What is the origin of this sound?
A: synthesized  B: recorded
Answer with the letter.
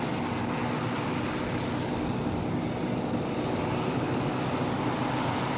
B